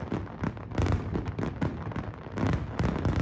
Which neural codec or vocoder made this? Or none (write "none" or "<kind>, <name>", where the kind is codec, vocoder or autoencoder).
none